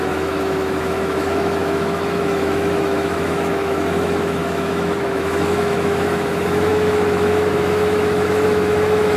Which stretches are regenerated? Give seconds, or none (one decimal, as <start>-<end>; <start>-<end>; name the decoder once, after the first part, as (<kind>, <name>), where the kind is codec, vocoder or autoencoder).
0.0-9.2 (autoencoder, DAC-VAE)

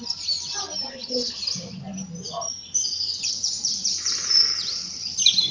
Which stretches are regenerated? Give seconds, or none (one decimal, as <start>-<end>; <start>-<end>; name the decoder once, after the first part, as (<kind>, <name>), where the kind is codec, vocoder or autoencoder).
0.9-1.4 (codec, HILCodec)

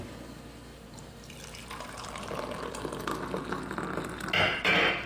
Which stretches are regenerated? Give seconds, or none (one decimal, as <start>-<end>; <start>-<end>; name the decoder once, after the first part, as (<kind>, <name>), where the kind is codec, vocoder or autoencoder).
0.7-2.8 (vocoder, BigVGAN v2); 4.5-5.1

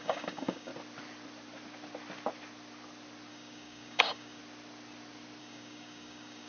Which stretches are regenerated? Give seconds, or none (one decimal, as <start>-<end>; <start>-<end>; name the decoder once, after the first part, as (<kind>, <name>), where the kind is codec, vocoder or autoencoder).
0.0-0.7 (codec, DAC); 3.3-4.4; 5.4-6.5

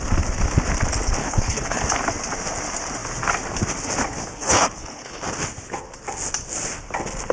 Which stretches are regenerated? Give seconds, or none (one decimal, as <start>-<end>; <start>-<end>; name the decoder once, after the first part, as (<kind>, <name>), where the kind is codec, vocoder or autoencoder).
1.2-1.8 (codec, HILCodec); 4.3-5.2

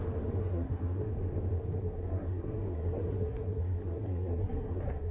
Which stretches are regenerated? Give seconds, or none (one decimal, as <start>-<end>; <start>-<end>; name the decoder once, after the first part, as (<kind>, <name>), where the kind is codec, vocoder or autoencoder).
0.4-1.1 (codec, SNAC); 1.8-5.1